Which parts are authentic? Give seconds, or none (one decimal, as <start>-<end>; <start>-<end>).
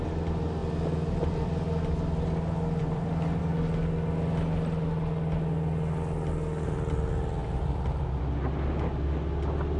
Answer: 0.0-0.6; 1.8-2.8; 3.4-7.4; 8.2-9.8